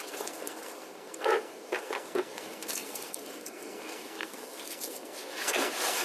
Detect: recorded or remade remade